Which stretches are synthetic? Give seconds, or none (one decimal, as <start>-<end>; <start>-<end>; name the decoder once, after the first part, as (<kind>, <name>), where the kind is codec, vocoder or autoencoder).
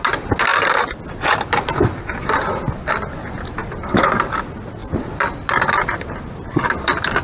0.5-1.0 (vocoder, BigVGAN v2); 4.8-7.2